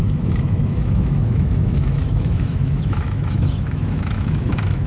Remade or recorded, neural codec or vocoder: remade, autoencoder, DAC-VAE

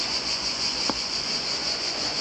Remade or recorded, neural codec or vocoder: remade, vocoder, Vocos